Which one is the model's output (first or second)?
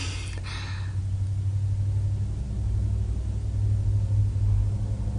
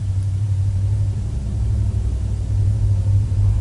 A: second